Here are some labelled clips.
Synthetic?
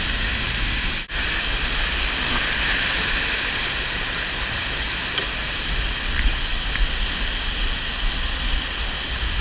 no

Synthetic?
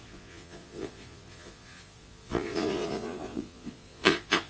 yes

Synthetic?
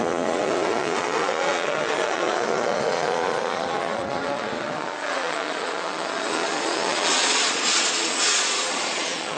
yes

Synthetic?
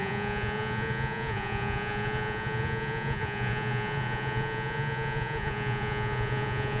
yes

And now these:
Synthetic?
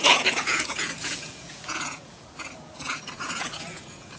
yes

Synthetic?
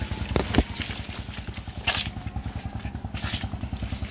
no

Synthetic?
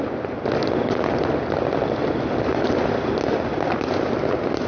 no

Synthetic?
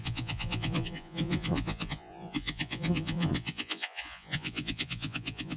yes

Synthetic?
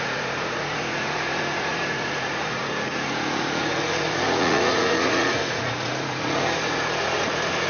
yes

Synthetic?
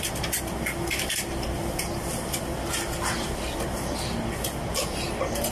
no